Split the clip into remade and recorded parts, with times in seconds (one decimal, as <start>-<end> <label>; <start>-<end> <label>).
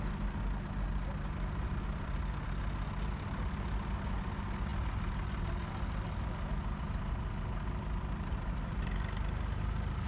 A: 0.0-10.1 recorded